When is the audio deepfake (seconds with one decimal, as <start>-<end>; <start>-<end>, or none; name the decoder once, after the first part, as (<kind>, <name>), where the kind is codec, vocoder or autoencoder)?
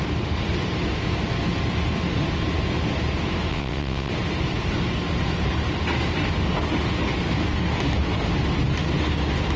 3.5-4.1 (vocoder, WaveNeXt)